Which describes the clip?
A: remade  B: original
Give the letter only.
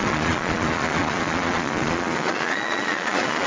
A